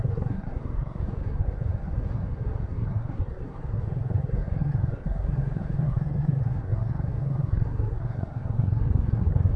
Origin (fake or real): fake